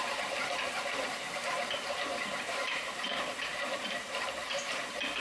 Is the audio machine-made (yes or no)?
yes